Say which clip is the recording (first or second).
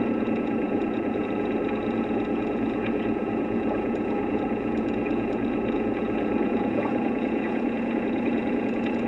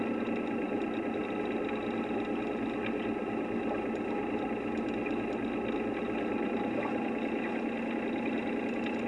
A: second